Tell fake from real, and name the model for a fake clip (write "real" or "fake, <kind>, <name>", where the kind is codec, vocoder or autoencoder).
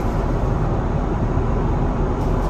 fake, vocoder, BigVGAN v2